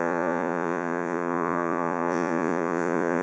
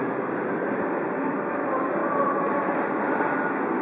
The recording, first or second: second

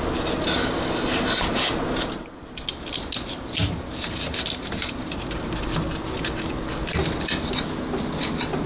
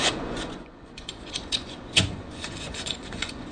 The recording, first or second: first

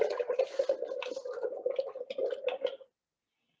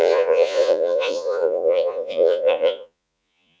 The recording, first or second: first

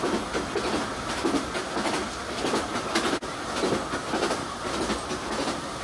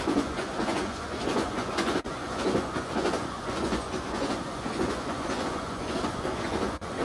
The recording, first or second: first